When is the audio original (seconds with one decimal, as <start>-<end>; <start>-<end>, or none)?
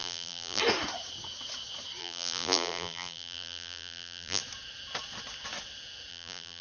0.6-2.0; 4.4-6.1